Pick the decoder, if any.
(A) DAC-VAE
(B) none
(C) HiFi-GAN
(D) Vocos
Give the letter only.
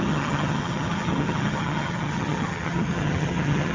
C